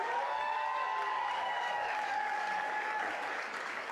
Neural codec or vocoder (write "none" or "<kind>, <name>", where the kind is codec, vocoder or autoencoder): codec, DAC